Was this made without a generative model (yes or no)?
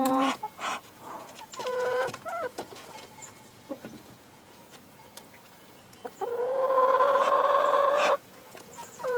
no